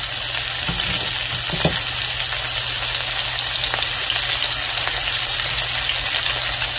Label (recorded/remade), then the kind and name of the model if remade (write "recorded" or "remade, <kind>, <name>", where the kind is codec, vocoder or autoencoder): recorded